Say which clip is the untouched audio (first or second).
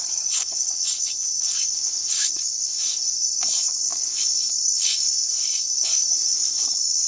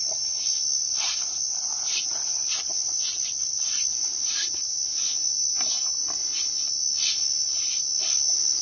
second